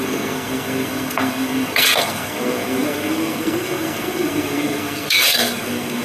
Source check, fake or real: fake